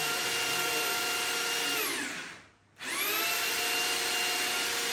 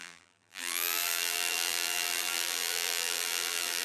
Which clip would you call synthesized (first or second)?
second